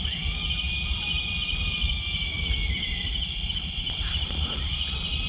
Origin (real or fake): fake